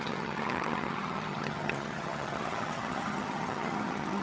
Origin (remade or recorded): remade